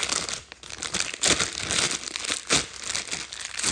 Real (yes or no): yes